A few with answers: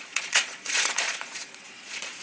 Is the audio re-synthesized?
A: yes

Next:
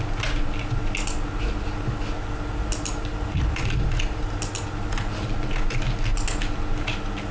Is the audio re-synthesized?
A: no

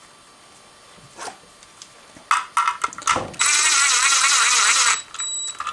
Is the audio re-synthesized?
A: no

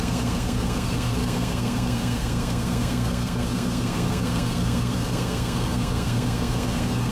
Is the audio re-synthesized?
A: yes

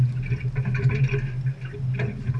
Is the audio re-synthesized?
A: no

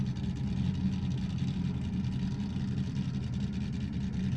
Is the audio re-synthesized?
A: no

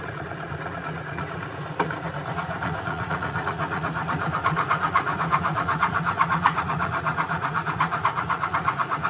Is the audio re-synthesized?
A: yes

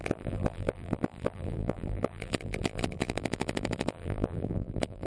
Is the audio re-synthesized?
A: yes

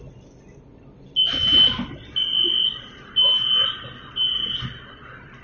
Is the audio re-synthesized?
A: no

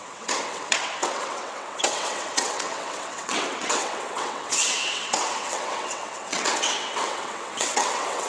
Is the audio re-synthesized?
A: yes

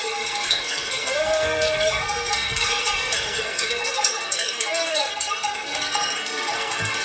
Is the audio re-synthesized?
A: yes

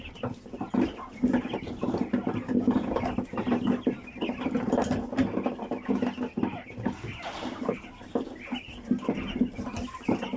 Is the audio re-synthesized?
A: no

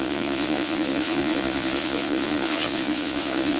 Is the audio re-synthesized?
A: yes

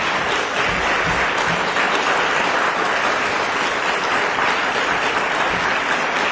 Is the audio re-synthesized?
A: yes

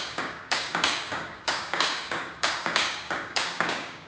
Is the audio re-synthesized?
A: yes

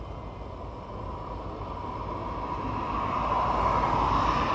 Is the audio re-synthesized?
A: no